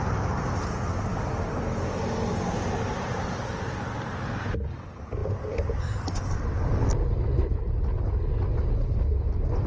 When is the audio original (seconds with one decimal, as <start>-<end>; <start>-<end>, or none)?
0.0-9.7